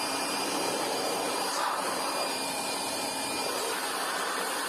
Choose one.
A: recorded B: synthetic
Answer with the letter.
B